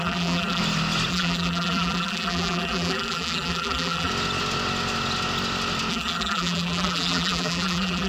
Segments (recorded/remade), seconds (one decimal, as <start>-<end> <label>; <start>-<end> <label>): 0.0-0.6 remade; 0.6-1.1 recorded; 1.1-4.1 remade; 4.1-5.9 recorded; 5.9-8.1 remade